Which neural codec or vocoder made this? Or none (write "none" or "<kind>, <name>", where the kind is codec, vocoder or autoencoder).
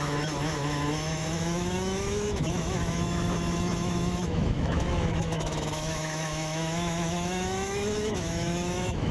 autoencoder, DAC-VAE